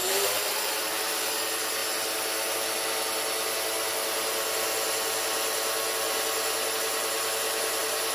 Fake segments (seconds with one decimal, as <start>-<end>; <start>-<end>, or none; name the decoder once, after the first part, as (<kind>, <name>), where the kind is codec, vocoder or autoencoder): 0.0-1.8 (vocoder, BigVGAN v2); 6.7-8.1